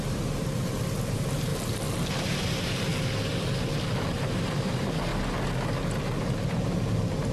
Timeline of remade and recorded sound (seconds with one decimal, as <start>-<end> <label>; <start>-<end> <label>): 0.0-1.5 remade; 1.5-2.1 recorded; 2.1-2.9 remade; 2.9-4.1 recorded; 4.1-5.1 remade; 5.1-6.0 recorded; 6.0-7.3 remade

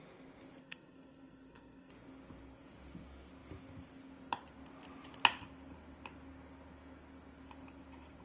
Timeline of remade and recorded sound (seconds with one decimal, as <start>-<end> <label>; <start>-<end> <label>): 0.0-0.6 recorded; 0.6-1.9 remade; 1.9-8.2 recorded

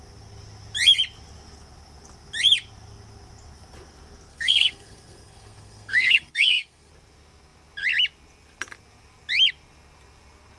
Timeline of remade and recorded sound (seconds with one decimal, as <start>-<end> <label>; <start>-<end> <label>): 0.0-4.3 recorded; 4.3-6.9 remade; 6.9-10.6 recorded